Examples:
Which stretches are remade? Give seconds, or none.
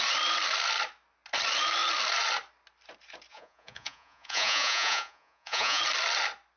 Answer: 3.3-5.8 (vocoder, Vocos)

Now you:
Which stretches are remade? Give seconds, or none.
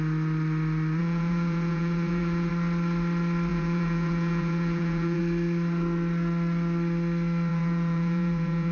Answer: 1.0-2.5 (vocoder, Vocos); 3.5-5.2; 7.5-8.7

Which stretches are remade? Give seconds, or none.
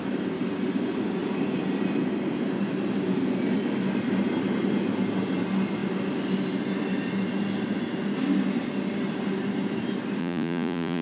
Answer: 10.2-11.0 (vocoder, Vocos)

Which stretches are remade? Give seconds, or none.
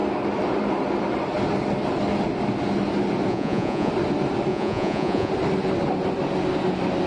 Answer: 3.3-3.9 (vocoder, Vocos); 4.5-5.3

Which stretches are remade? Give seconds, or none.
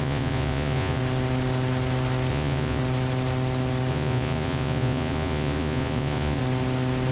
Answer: 0.0-1.0 (vocoder, Vocos); 2.3-2.8; 3.9-6.4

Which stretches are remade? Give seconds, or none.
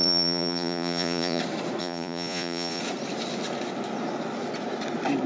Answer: 0.0-1.4 (vocoder, Vocos); 1.8-2.8